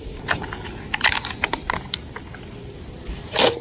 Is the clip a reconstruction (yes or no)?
no